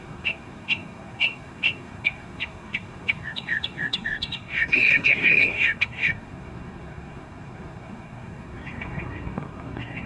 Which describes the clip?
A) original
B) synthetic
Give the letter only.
B